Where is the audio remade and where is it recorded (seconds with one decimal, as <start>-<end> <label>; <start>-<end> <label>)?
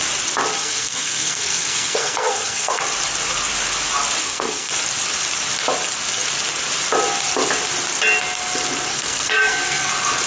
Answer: 0.0-0.6 recorded; 0.6-2.8 remade; 2.8-4.2 recorded; 4.2-4.7 remade; 4.7-8.9 recorded; 8.9-9.9 remade; 9.9-10.3 recorded